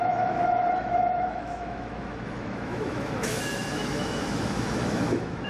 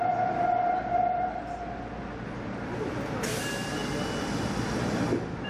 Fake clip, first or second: first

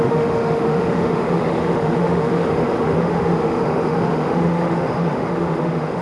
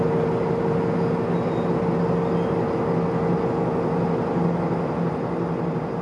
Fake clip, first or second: first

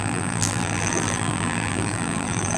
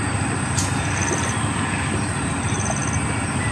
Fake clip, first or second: first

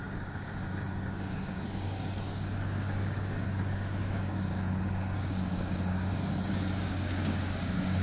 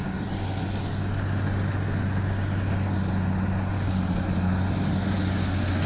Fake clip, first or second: first